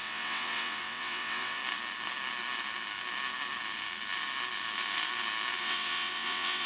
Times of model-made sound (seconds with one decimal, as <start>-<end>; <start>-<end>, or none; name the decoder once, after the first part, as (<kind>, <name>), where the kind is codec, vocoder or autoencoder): 0.0-1.6 (vocoder, WaveNeXt); 5.6-6.7